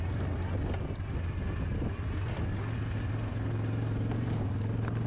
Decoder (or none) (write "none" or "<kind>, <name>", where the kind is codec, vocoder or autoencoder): none